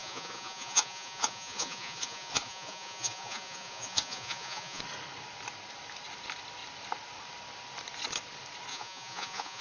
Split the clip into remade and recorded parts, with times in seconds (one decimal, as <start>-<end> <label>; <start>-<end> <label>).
0.0-4.8 remade; 4.8-8.7 recorded; 8.7-9.6 remade